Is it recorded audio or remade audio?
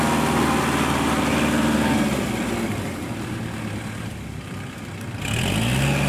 recorded